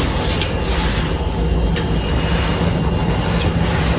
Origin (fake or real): real